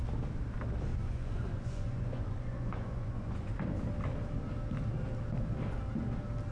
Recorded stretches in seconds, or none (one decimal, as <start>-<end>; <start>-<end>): 0.0-0.9; 3.5-6.5